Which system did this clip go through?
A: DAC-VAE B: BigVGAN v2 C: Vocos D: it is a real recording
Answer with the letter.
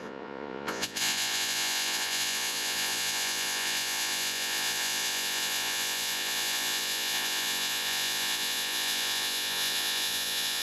C